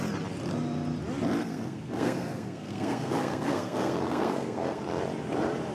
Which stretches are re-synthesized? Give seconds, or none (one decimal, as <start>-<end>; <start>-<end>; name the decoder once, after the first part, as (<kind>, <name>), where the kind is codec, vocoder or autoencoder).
1.4-4.8 (codec, SNAC)